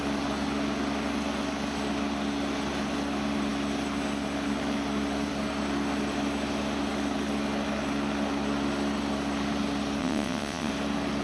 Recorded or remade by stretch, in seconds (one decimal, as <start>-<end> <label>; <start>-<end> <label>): 0.0-10.0 recorded; 10.0-10.7 remade; 10.7-11.2 recorded